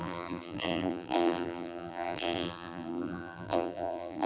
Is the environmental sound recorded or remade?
remade